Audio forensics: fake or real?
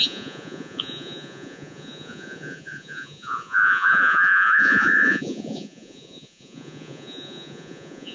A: fake